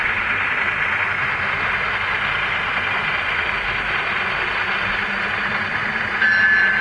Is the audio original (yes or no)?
yes